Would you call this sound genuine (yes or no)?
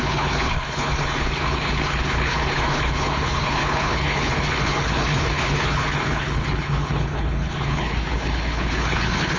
no